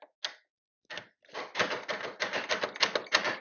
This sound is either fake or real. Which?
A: real